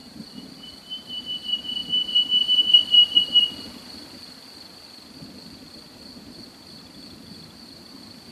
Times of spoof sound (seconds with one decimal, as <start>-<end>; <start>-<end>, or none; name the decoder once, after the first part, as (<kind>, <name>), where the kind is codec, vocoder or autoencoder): 0.0-1.2 (vocoder, BigVGAN v2); 1.8-3.2